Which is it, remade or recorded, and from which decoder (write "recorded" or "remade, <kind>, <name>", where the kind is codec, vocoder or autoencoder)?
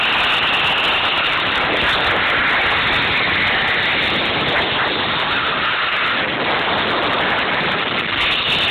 recorded